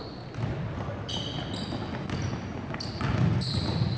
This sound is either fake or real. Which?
real